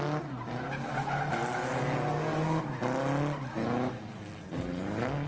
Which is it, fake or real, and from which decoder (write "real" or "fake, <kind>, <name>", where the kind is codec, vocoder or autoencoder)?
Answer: real